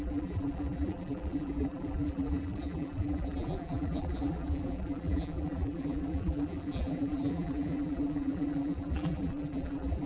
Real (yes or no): no